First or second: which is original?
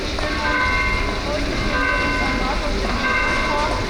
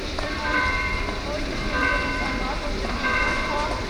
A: first